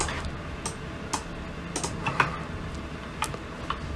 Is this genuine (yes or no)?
yes